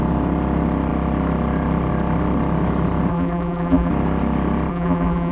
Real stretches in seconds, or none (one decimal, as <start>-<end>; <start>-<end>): 0.0-3.1; 3.9-4.7